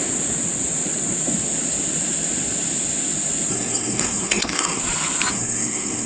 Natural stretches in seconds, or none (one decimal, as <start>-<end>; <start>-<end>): 0.0-3.5; 4.8-5.3